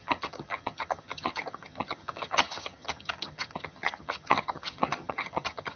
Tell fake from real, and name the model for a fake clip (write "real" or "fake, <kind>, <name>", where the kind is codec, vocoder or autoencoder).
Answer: fake, vocoder, HiFi-GAN